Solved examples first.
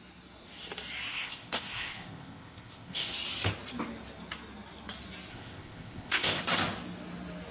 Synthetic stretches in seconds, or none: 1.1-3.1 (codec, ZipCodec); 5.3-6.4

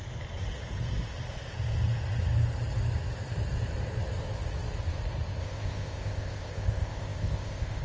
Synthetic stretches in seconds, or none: 5.4-7.8 (codec, ZipCodec)

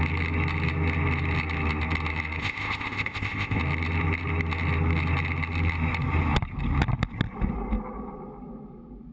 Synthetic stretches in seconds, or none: 2.4-3.6 (codec, ZipCodec)

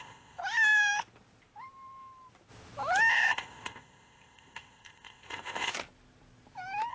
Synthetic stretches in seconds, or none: 0.0-0.4 (codec, ZipCodec); 3.1-5.7